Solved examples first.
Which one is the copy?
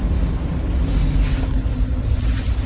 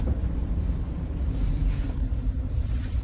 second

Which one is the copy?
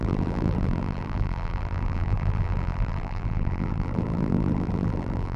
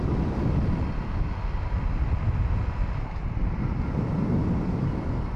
first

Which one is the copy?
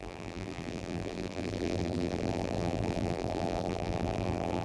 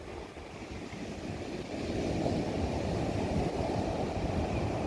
first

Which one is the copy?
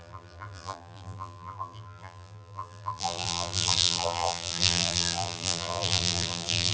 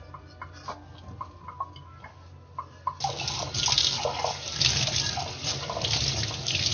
first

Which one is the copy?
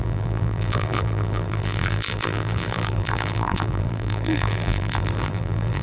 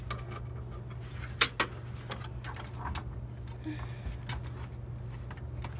first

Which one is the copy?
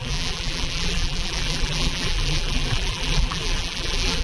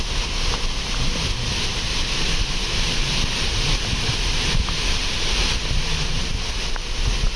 first